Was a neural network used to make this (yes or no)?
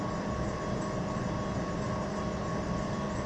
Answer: no